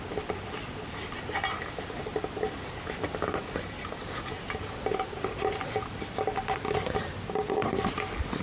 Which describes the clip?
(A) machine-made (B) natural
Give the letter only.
B